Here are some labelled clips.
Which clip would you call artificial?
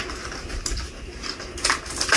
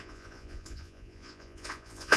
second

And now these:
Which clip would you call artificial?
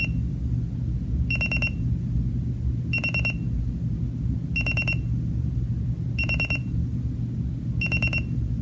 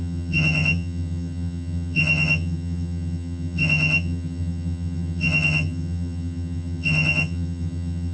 second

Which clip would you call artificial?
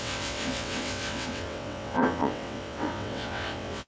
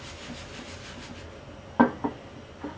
first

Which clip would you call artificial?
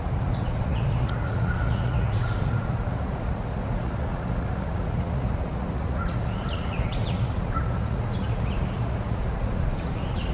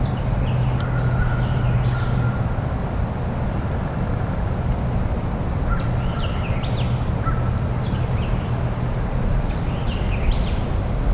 first